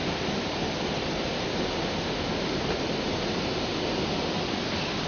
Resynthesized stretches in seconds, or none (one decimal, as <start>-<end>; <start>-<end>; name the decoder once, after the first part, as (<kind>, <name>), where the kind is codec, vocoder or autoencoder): 0.0-1.4 (vocoder, BigVGAN v2)